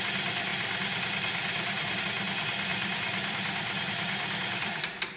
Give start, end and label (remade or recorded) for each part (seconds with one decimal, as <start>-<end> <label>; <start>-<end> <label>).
0.0-2.7 recorded; 2.7-4.8 remade; 4.8-5.2 recorded